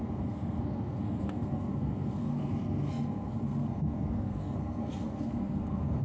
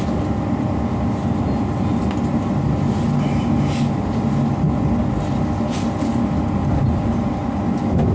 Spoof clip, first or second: first